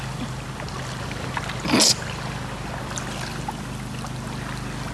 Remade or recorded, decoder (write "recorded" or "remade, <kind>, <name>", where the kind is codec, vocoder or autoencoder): recorded